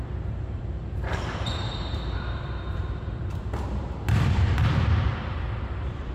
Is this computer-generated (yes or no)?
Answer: yes